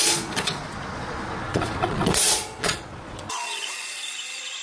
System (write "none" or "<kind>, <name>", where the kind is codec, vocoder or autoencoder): vocoder, Vocos